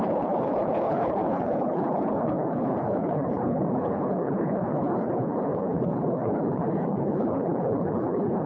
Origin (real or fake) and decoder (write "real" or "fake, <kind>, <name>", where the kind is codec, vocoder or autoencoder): fake, codec, HILCodec